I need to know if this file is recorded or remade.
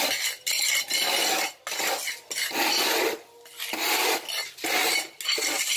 recorded